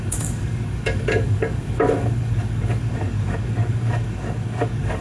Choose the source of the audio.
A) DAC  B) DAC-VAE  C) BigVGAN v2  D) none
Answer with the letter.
A